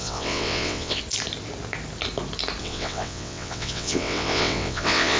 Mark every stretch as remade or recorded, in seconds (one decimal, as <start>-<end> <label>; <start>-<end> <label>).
0.0-1.0 remade; 1.0-2.6 recorded; 2.6-5.2 remade